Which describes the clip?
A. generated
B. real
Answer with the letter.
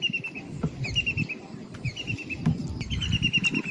B